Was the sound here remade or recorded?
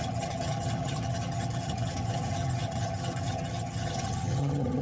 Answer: remade